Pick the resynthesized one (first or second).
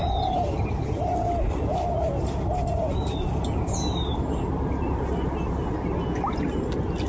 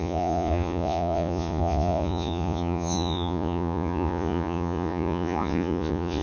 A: second